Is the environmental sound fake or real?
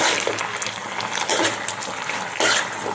real